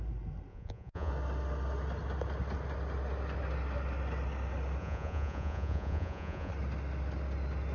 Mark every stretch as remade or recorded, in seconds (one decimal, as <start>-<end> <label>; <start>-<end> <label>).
0.0-0.5 recorded; 0.5-1.1 remade; 1.1-4.8 recorded; 4.8-6.5 remade; 6.5-7.7 recorded

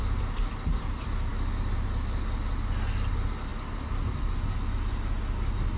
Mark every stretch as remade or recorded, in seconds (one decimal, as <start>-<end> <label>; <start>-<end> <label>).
0.0-5.8 recorded

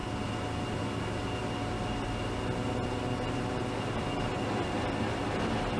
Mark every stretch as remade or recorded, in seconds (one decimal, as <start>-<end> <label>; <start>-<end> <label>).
0.0-5.8 recorded

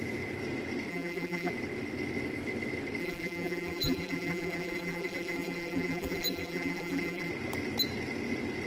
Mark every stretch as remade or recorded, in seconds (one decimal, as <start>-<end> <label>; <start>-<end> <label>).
0.0-0.9 recorded; 0.9-1.5 remade; 1.5-3.0 recorded; 3.0-7.3 remade; 7.3-8.7 recorded

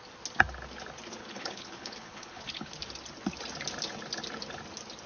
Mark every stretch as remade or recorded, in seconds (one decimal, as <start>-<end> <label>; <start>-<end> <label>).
0.0-1.2 recorded; 1.2-2.7 remade; 2.7-5.1 recorded

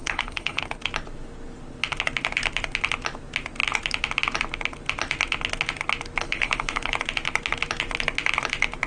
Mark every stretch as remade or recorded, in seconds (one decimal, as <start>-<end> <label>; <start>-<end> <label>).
0.0-0.6 remade; 0.6-6.2 recorded; 6.2-6.9 remade; 6.9-8.9 recorded

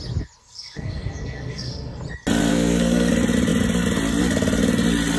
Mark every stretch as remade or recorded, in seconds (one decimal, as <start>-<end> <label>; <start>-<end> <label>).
0.0-0.4 recorded; 0.4-2.0 remade; 2.0-2.5 recorded; 2.5-3.1 remade; 3.1-5.2 recorded

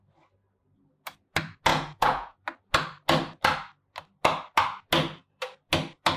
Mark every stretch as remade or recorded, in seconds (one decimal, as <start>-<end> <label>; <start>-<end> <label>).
0.0-1.7 recorded; 1.7-2.4 remade; 2.4-6.2 recorded